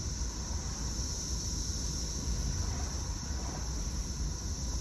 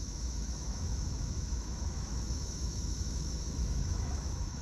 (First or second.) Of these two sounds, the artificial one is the second